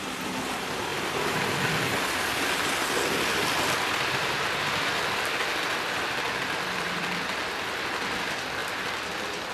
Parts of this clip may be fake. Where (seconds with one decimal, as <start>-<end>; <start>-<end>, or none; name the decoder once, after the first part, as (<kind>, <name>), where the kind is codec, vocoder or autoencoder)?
none

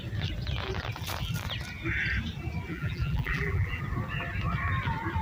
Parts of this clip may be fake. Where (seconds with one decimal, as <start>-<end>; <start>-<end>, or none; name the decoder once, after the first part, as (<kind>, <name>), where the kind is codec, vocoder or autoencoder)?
2.7-3.8 (vocoder, BigVGAN v2)

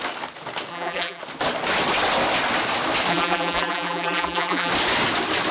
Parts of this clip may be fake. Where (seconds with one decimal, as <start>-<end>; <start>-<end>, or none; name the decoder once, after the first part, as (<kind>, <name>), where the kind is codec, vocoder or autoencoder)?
0.7-1.2 (vocoder, BigVGAN v2); 3.1-4.7